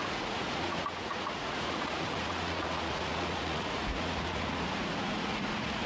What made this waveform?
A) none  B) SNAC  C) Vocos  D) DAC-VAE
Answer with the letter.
C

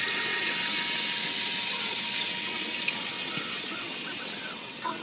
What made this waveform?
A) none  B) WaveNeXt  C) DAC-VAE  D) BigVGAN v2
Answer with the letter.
B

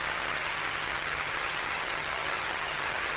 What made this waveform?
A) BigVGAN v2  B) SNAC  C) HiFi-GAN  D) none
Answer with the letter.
C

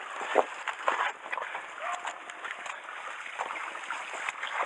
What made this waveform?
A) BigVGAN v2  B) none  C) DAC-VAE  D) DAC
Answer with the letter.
B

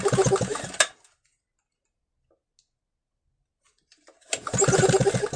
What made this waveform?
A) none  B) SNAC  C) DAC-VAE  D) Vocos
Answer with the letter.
A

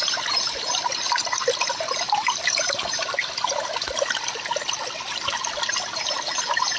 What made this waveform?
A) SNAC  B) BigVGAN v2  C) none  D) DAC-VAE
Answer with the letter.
C